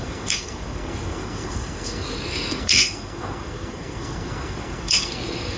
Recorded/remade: remade